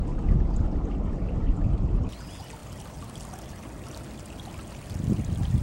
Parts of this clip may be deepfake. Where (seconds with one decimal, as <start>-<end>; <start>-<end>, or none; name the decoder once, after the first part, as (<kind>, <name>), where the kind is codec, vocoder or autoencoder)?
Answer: none